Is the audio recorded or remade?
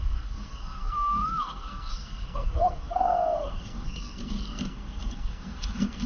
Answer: remade